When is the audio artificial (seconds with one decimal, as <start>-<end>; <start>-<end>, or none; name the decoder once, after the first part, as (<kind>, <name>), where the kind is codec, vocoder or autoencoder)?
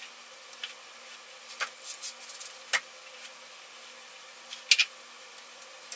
none